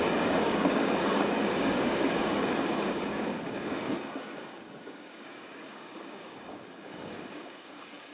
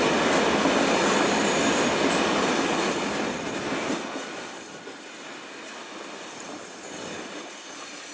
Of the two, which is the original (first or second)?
second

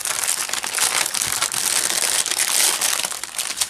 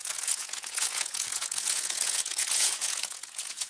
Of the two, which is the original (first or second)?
first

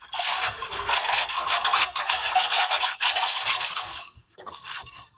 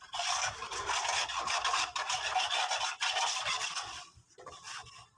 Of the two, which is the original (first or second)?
second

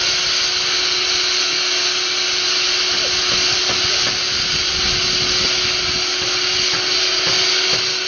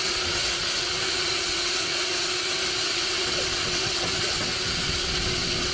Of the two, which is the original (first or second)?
first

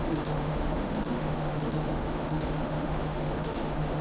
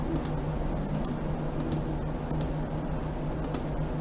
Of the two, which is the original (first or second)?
second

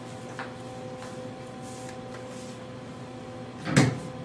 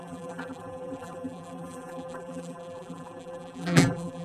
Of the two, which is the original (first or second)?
first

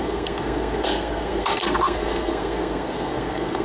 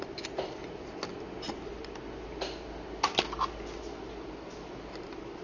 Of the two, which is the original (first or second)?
second